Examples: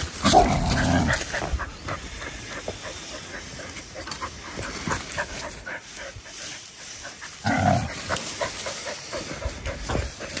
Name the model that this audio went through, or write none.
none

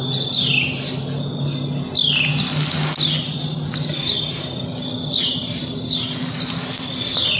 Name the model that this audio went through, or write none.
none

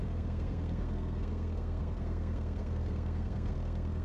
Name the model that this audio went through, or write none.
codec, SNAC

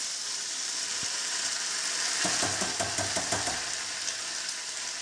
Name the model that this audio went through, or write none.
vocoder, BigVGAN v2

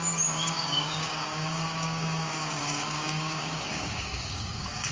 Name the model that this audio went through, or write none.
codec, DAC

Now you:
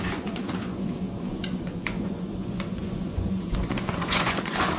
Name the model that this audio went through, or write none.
vocoder, Vocos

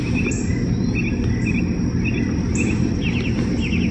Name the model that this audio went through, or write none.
none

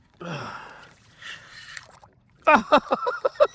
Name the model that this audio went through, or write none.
vocoder, Vocos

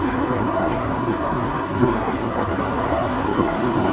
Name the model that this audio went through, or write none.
codec, SNAC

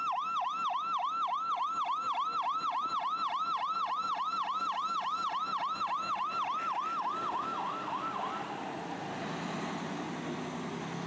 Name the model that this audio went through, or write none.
none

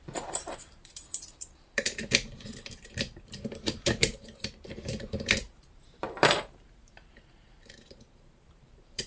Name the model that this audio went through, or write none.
vocoder, BigVGAN v2